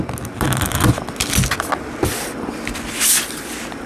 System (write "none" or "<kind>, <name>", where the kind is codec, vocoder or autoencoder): none